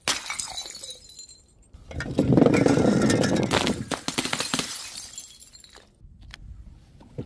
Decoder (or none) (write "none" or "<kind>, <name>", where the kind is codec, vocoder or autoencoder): none